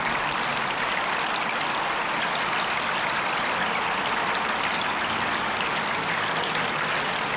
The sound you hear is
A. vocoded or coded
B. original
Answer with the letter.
B